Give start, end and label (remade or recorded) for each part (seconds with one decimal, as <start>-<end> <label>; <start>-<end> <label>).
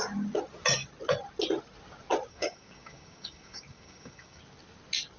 0.0-2.3 recorded; 2.3-4.4 remade; 4.4-5.2 recorded